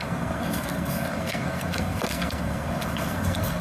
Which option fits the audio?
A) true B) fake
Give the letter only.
B